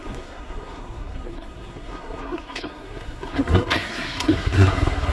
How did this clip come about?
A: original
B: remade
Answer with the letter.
B